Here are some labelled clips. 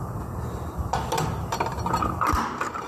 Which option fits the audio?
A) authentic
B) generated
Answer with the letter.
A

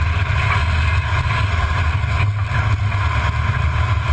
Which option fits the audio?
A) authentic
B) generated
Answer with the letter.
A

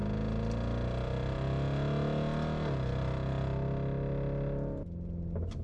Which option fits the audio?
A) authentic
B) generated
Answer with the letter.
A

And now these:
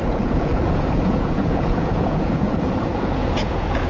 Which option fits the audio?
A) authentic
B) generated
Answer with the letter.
B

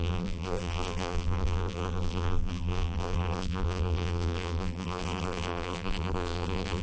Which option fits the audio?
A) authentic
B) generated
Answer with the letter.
B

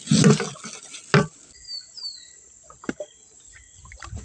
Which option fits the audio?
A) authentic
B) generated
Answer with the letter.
A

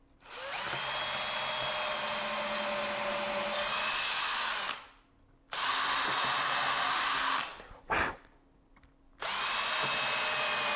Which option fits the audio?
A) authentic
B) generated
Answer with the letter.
A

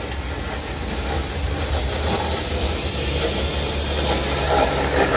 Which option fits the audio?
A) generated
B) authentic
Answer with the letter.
B